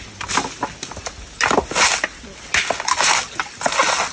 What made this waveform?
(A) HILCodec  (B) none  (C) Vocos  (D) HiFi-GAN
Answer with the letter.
B